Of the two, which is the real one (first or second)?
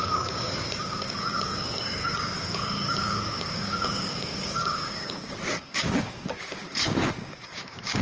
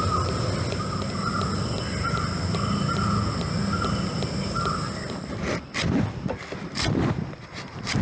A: second